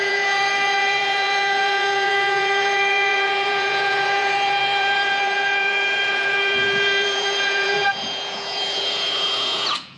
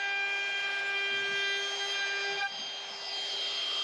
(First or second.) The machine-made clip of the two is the first